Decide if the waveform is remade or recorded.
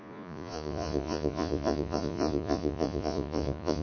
remade